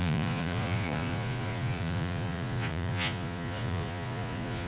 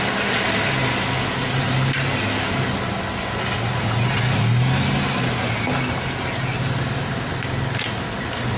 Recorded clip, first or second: second